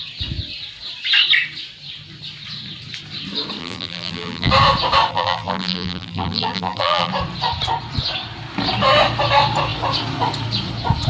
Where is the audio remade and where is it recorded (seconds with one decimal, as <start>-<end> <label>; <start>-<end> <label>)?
0.0-3.6 recorded; 3.6-4.5 remade; 4.5-5.1 recorded; 5.1-7.1 remade; 7.1-11.1 recorded